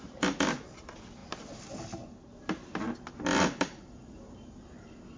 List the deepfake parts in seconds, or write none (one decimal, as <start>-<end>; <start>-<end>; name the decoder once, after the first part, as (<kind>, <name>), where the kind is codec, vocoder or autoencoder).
none